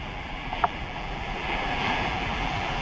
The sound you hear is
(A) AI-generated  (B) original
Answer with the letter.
A